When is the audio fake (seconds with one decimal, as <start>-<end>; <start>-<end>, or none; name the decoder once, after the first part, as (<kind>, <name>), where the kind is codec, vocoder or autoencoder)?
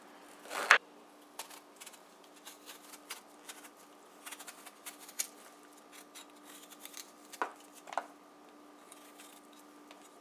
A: none